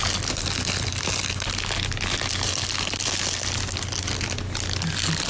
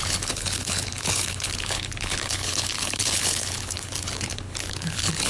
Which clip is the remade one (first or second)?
second